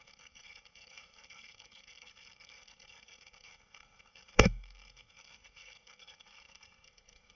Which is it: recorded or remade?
remade